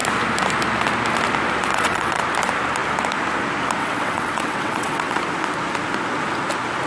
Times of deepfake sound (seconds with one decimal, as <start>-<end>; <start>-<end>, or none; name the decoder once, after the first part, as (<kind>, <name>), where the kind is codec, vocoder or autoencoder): 1.7-2.2 (vocoder, WaveNeXt); 3.8-5.2